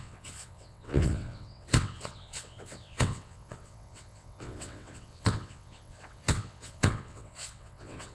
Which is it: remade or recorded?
remade